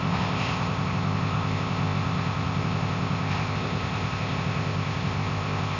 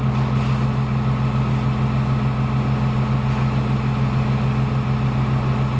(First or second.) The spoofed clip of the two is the first